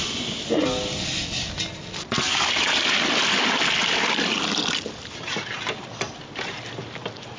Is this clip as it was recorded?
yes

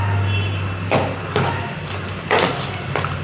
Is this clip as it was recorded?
yes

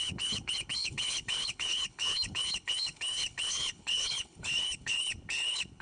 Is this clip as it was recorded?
no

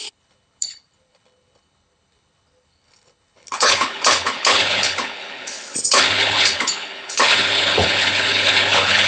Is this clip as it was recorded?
no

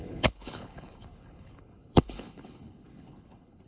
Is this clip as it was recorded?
no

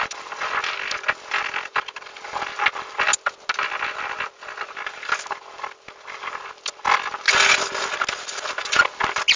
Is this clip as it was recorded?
yes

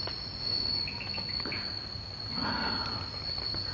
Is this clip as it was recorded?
yes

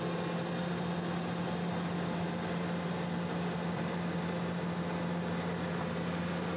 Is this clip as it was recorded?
yes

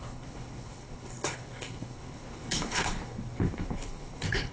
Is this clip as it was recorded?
no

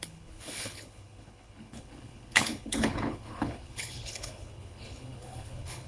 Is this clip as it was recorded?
no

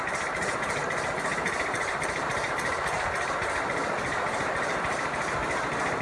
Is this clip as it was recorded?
yes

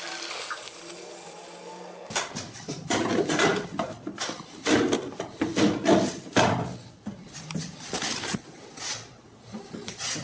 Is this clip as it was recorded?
yes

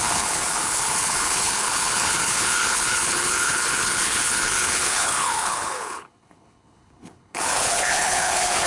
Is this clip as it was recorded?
no